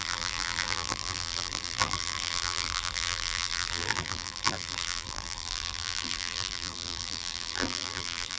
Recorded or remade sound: remade